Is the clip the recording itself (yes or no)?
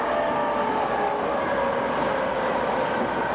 yes